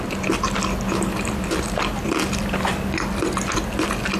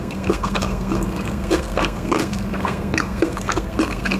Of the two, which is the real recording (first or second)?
first